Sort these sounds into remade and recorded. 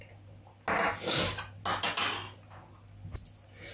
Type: recorded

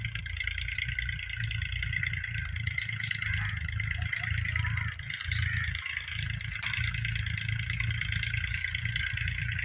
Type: recorded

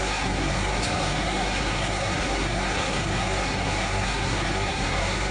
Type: remade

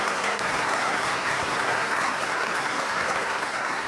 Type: remade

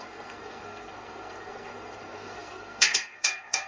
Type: remade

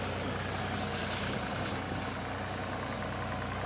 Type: recorded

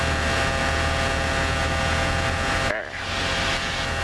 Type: recorded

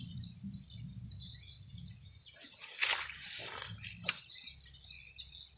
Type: recorded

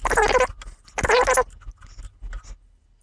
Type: recorded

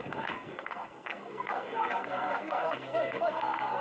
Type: remade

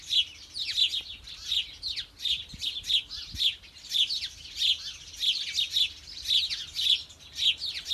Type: recorded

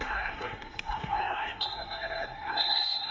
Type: remade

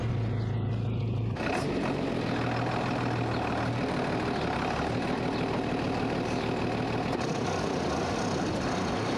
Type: recorded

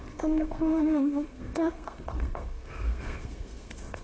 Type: remade